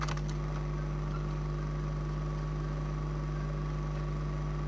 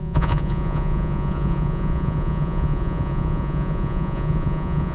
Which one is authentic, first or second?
first